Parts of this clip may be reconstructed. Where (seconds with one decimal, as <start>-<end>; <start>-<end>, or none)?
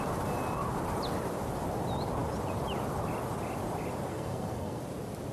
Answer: 4.1-4.8